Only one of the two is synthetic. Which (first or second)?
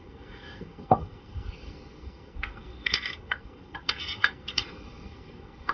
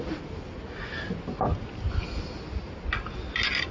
first